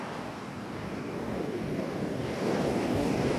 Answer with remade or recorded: remade